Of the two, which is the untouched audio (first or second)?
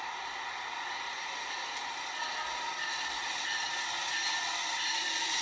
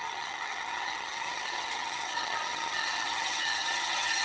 first